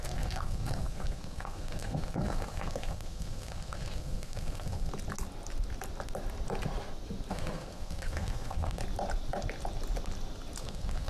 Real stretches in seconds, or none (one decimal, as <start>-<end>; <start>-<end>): 4.9-7.3; 8.8-10.6